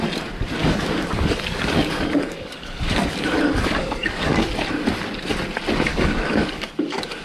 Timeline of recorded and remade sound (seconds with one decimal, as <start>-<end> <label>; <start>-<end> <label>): 0.0-0.6 recorded; 0.6-4.5 remade; 4.5-5.9 recorded; 5.9-7.2 remade